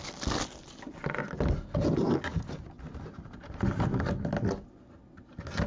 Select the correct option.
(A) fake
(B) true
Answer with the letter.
B